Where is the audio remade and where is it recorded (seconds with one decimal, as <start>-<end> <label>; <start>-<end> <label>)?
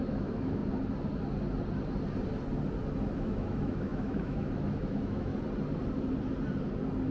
0.0-0.6 remade; 0.6-3.2 recorded; 3.2-5.3 remade; 5.3-7.1 recorded